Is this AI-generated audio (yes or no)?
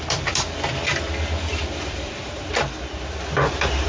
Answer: yes